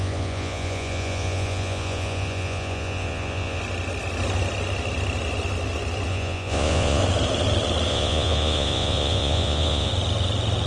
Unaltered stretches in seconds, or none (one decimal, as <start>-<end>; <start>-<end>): 3.6-6.1; 7.0-7.9; 9.9-10.7